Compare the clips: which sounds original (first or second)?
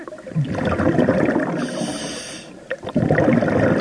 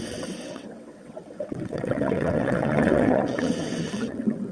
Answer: first